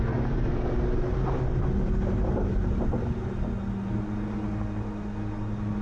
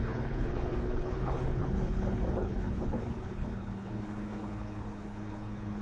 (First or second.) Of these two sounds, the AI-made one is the second